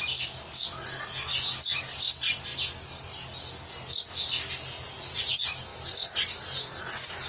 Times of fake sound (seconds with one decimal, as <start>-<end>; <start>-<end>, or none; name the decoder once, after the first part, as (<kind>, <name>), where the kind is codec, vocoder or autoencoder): none